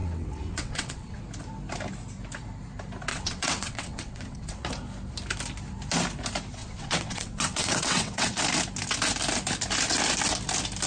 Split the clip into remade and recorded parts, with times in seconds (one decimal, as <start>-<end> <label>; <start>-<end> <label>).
0.0-1.2 remade; 1.2-3.1 recorded; 3.1-4.7 remade; 4.7-6.6 recorded; 6.6-8.4 remade; 8.4-10.9 recorded